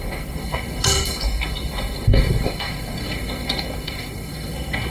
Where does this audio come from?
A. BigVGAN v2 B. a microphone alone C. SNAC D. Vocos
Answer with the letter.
C